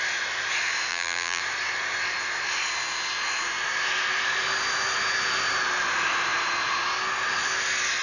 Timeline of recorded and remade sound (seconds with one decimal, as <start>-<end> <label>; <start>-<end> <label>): 0.0-0.9 recorded; 0.9-1.4 remade; 1.4-8.0 recorded